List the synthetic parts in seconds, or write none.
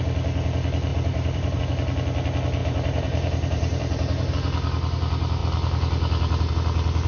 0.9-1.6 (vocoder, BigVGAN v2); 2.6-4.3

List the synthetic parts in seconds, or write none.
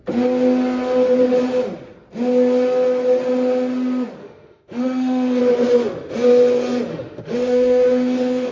4.2-5.4 (autoencoder, DAC-VAE); 6.9-8.5